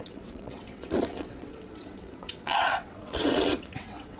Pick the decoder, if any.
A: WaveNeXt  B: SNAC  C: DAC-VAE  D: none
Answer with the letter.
A